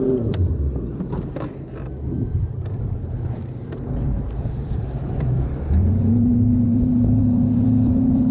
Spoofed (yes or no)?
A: yes